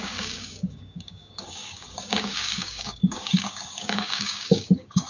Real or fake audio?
fake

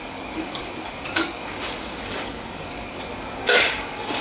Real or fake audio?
fake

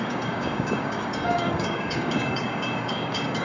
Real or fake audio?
fake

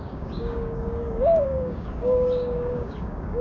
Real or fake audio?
fake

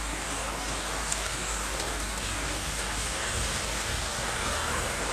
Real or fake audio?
fake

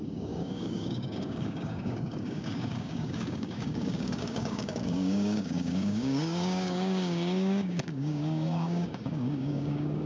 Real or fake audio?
fake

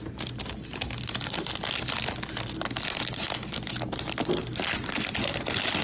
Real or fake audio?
real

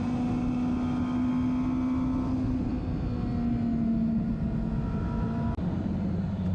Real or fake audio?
real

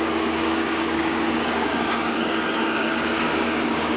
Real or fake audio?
fake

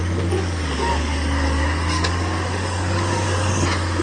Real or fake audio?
fake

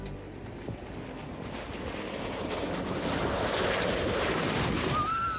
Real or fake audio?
real